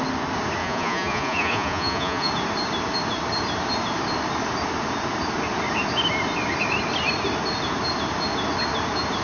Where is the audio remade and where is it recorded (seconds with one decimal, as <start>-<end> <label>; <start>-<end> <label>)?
0.0-0.6 recorded; 0.6-2.3 remade; 2.3-9.2 recorded